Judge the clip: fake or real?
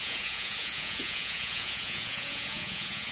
fake